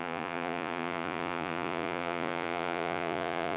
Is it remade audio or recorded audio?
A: remade